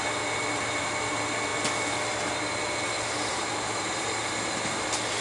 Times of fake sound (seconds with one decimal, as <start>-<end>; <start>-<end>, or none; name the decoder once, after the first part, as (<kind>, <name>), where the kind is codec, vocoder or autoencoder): none